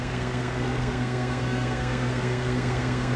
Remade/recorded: remade